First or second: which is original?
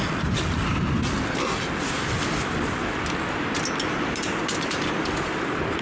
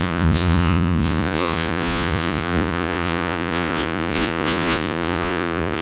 first